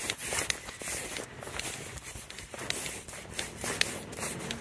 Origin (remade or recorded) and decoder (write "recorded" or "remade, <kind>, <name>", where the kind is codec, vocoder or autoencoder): recorded